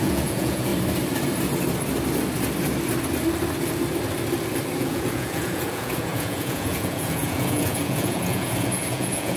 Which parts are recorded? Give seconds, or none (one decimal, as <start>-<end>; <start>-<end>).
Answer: 0.7-4.8